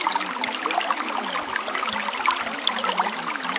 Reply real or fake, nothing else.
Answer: real